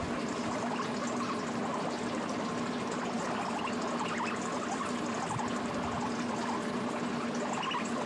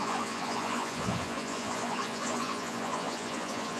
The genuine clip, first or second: first